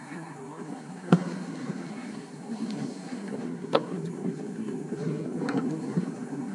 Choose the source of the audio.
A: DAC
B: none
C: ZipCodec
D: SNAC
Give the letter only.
D